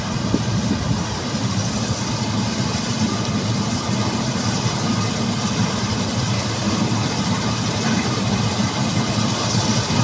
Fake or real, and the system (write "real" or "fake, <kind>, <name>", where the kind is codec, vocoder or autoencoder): fake, vocoder, BigVGAN v2